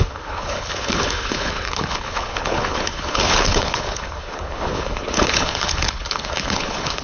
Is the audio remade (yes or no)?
yes